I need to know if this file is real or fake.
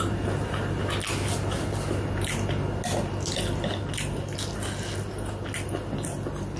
real